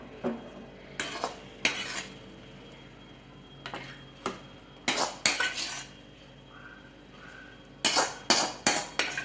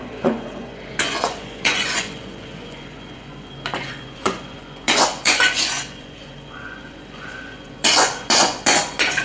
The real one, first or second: first